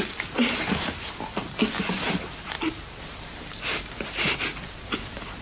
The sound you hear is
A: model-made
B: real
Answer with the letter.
B